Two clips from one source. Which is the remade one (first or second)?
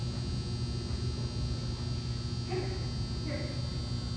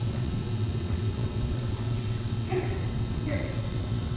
second